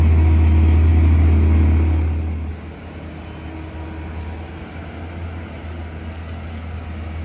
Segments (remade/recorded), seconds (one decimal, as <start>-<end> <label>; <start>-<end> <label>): 0.0-7.2 recorded